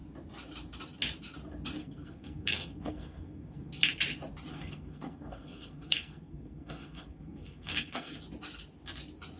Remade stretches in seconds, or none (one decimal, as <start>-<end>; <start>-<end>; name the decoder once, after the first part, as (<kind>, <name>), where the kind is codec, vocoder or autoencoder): 1.8-3.7 (codec, SNAC); 4.5-8.2